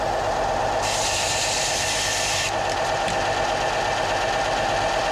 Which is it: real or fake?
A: real